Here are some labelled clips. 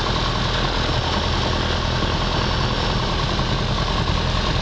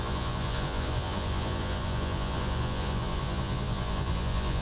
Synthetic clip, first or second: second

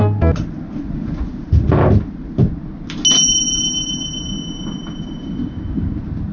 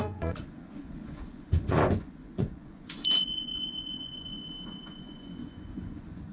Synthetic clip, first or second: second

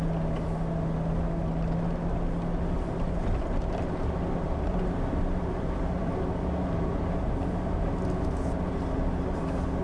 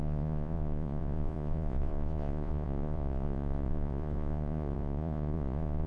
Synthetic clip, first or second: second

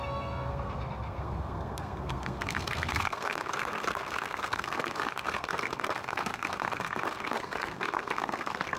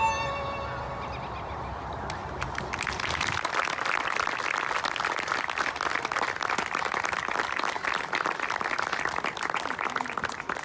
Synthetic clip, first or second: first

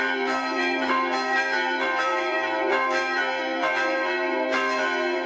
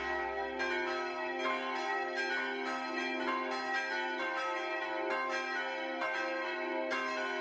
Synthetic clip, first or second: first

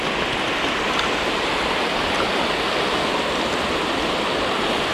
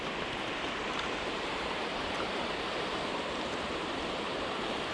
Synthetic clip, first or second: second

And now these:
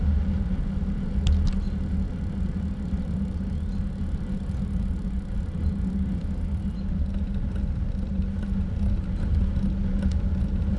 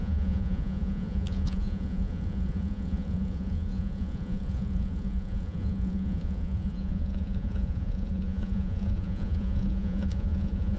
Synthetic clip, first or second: second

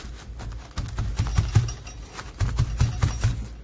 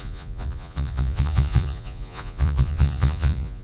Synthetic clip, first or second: second